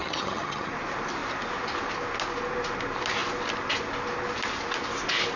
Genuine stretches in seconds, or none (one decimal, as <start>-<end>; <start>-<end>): 0.7-5.4